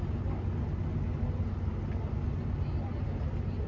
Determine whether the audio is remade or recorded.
recorded